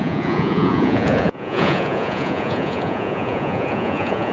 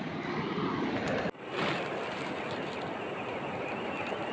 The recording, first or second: second